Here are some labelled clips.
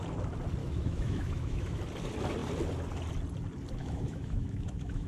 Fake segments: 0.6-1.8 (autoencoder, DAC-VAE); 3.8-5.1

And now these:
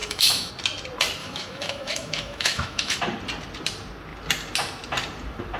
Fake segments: 0.0-0.5 (autoencoder, DAC-VAE); 1.2-3.0

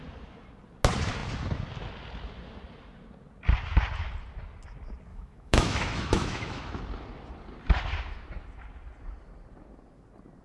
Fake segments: 5.1-6.8 (autoencoder, DAC-VAE)

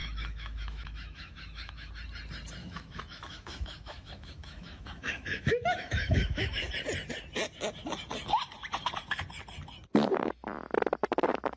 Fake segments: 0.0-1.9 (autoencoder, DAC-VAE); 2.6-6.7

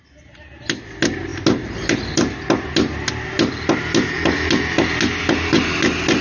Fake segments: none

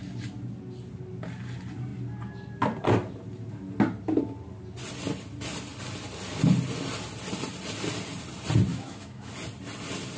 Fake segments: 8.7-9.3 (autoencoder, DAC-VAE)

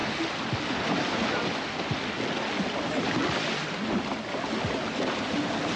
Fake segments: none

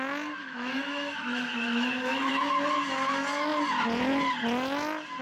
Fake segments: 0.4-2.3 (autoencoder, DAC-VAE)